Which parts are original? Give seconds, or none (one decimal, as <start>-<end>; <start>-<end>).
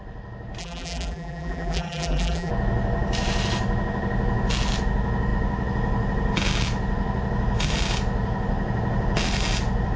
0.0-0.6; 2.5-10.0